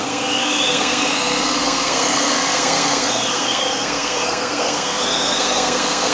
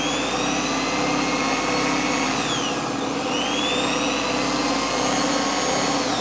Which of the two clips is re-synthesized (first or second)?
first